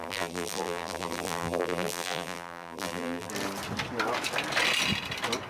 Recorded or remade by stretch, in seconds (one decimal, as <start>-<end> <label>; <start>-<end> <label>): 0.0-3.3 remade; 3.3-5.5 recorded